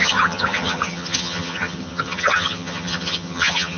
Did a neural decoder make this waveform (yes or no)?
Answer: yes